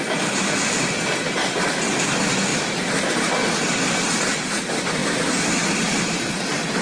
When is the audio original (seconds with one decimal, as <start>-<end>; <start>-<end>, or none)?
0.0-6.8

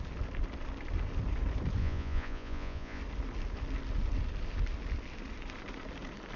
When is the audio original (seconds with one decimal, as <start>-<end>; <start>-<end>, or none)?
0.0-1.8; 3.0-6.4

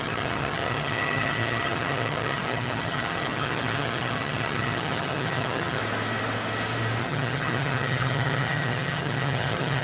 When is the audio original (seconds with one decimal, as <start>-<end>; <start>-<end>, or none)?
5.8-7.0

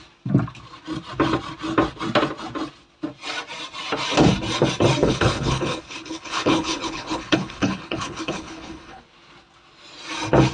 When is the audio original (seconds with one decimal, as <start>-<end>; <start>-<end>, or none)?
0.0-5.0; 9.0-10.5

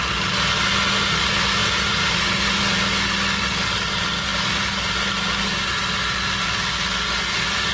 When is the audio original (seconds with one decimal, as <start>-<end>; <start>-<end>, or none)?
0.0-1.6; 2.6-7.7